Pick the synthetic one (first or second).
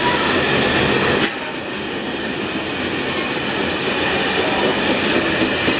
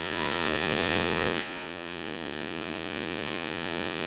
second